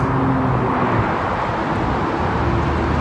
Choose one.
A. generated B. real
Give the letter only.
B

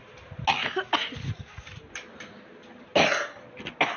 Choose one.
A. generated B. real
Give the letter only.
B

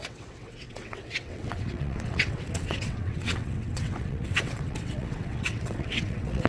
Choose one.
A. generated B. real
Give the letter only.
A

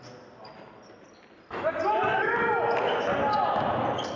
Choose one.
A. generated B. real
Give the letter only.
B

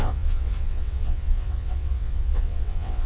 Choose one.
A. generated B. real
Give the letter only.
A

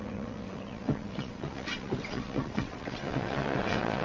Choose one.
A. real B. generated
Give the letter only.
B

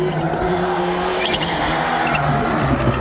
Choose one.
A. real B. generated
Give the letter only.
A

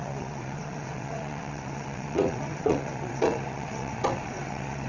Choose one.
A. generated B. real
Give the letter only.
A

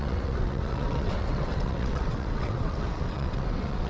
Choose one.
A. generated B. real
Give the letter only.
A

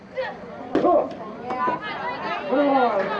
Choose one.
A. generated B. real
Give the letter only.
B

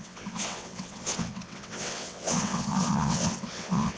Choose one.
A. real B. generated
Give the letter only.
B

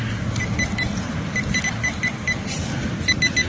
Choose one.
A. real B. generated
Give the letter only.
A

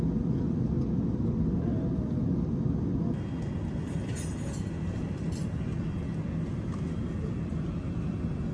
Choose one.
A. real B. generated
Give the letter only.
A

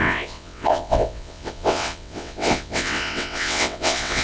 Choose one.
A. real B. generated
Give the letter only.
B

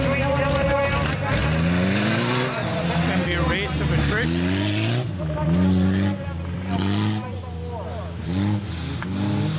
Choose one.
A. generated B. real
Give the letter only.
B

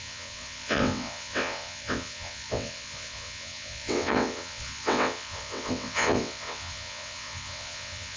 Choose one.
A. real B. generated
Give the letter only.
B